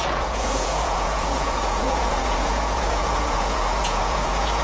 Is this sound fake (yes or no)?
yes